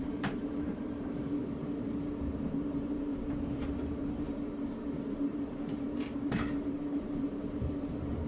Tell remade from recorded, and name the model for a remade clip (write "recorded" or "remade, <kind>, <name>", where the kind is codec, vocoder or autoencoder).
remade, vocoder, BigVGAN v2